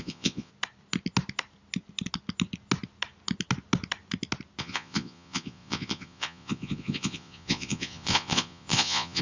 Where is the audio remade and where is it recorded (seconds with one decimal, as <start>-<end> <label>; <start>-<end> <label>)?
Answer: 0.0-0.5 remade; 0.5-4.6 recorded; 4.6-9.2 remade